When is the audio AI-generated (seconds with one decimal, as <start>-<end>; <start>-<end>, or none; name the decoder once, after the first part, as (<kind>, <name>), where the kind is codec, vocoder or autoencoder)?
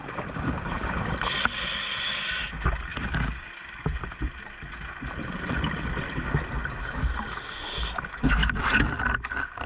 0.0-1.1 (codec, DAC); 2.9-3.5